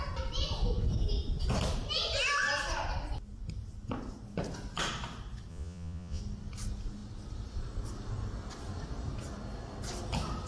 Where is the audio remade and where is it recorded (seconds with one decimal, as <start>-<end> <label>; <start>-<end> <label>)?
0.0-5.5 recorded; 5.5-6.2 remade; 6.2-10.5 recorded